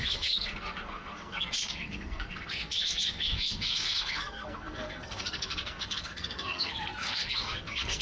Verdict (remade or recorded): remade